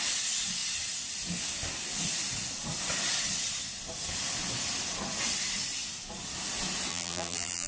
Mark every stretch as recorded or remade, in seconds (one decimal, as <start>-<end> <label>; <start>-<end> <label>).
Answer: 0.0-6.9 recorded; 6.9-7.7 remade